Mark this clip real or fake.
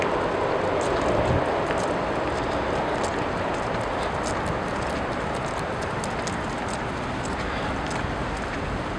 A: real